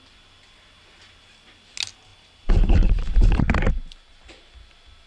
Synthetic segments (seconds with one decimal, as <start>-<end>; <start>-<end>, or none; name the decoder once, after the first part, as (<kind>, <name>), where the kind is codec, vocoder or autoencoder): 2.1-4.2 (vocoder, BigVGAN v2)